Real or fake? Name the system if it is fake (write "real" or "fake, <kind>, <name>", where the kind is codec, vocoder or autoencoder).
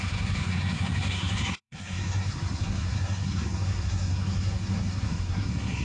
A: fake, codec, SNAC